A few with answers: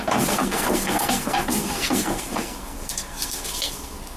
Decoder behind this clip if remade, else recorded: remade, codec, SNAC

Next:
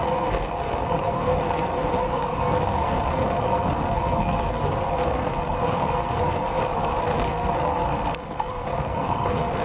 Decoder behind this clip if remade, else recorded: remade, codec, SNAC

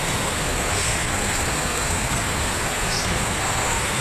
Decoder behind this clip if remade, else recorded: remade, codec, SNAC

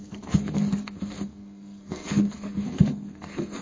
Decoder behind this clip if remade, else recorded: remade, codec, SNAC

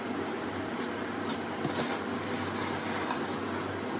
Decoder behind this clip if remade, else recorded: recorded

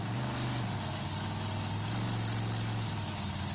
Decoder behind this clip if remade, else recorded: recorded